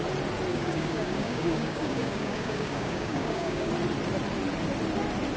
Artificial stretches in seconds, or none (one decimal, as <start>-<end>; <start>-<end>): 0.5-3.7

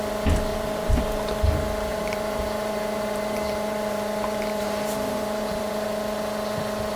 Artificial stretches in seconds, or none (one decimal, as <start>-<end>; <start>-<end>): 0.5-1.0; 1.9-5.7